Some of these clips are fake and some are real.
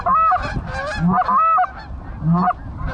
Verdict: real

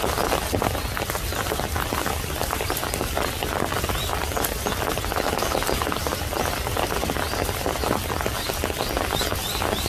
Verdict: real